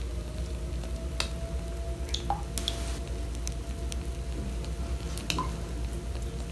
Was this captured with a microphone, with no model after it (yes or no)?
yes